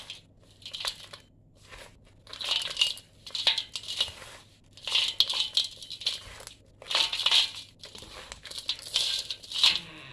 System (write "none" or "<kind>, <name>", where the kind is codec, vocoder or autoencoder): none